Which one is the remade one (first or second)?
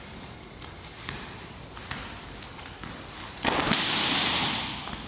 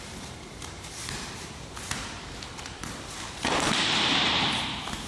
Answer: second